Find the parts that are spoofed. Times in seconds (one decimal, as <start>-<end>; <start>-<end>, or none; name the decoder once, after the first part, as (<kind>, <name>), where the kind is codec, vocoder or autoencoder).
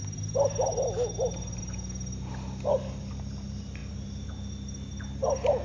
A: none